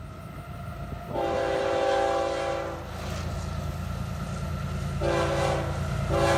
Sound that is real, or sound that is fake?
real